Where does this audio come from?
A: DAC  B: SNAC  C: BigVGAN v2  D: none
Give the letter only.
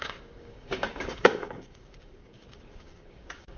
A